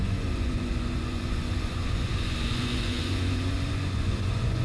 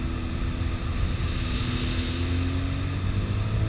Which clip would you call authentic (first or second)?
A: second